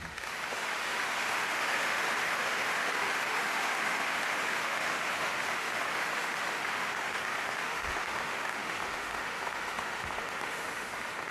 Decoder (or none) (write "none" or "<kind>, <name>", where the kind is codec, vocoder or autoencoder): autoencoder, DAC-VAE